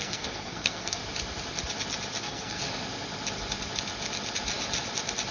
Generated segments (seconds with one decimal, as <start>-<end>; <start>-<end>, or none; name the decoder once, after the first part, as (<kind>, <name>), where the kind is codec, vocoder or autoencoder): 0.0-1.0 (codec, SNAC); 2.2-2.6